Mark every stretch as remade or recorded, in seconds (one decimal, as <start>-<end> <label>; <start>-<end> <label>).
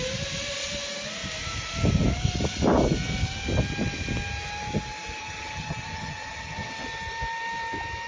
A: 0.0-5.2 recorded; 5.2-6.7 remade; 6.7-8.1 recorded